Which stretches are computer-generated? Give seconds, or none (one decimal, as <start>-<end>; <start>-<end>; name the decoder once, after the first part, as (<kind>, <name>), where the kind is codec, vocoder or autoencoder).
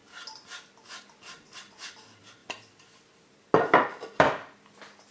1.0-2.4 (vocoder, BigVGAN v2); 3.8-5.1